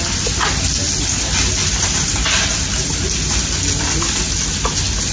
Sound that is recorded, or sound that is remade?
recorded